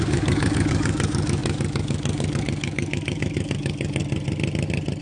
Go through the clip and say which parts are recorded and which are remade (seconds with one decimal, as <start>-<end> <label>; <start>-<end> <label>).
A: 0.0-4.0 remade; 4.0-5.0 recorded